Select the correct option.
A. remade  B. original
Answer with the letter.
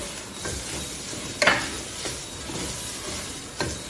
B